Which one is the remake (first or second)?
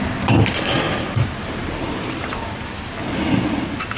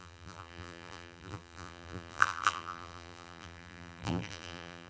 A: second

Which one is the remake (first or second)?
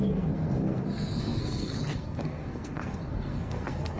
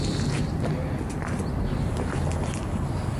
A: first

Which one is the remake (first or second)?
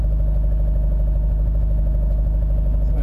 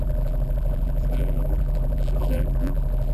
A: second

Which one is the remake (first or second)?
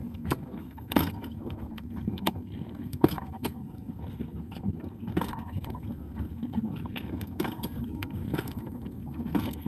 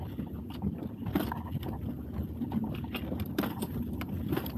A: first